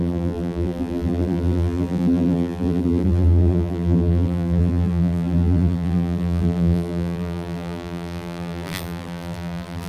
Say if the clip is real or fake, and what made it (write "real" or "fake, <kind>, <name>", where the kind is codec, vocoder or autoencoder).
fake, vocoder, BigVGAN v2